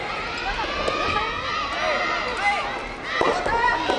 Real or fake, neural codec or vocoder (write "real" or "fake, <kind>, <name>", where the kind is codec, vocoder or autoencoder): real